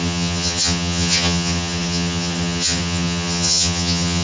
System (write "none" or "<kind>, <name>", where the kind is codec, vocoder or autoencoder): vocoder, HiFi-GAN